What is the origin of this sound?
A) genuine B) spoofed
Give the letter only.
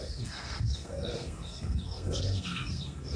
B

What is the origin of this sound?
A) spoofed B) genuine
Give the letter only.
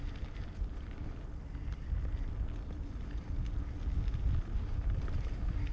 B